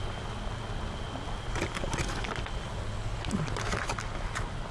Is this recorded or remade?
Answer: recorded